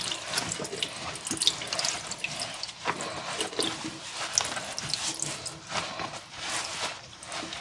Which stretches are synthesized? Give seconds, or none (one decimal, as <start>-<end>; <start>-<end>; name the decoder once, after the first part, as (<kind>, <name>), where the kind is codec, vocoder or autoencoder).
none